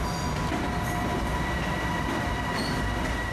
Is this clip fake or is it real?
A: real